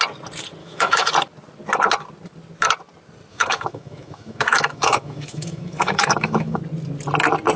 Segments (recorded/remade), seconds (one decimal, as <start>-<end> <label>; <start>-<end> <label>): 0.0-0.6 recorded; 0.6-1.1 remade; 1.1-3.3 recorded; 3.3-6.6 remade; 6.6-7.6 recorded